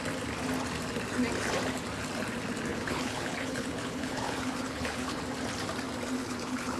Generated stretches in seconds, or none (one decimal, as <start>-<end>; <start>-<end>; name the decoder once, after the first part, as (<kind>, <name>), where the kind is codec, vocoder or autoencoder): 2.7-5.2 (codec, HILCodec); 6.2-6.8